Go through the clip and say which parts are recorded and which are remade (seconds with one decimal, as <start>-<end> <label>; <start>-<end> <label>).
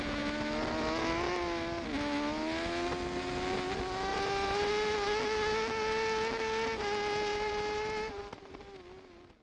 0.0-4.1 recorded; 4.1-4.7 remade; 4.7-7.3 recorded; 7.3-8.6 remade; 8.6-9.4 recorded